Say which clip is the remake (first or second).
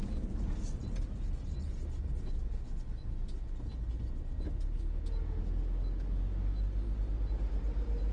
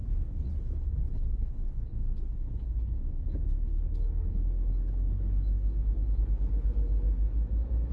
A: second